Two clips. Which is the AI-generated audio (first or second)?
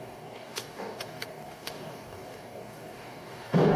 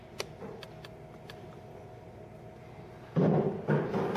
first